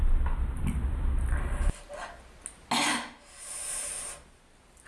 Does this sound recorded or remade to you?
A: recorded